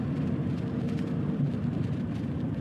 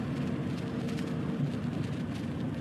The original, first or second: second